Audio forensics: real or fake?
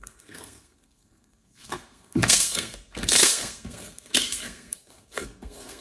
fake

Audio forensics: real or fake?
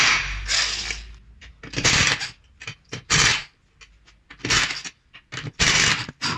real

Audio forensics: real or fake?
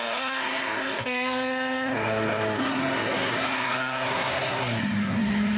fake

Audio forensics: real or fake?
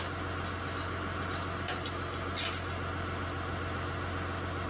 real